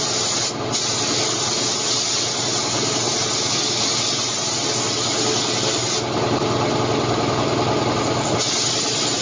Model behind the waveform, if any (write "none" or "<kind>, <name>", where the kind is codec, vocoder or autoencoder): none